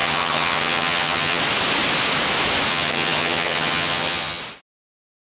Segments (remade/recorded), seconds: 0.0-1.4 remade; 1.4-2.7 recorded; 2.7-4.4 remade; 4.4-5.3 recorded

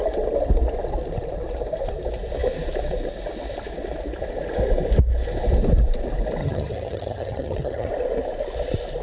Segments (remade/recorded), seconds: 0.0-6.4 recorded; 6.4-7.9 remade; 7.9-9.0 recorded